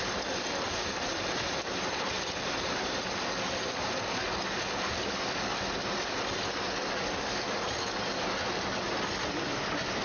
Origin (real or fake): real